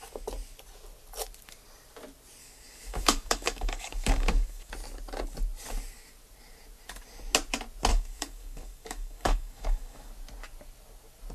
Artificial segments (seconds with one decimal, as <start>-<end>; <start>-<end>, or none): 2.4-4.7; 7.9-10.1